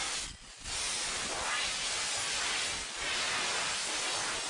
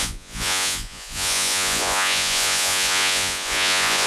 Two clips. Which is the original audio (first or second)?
first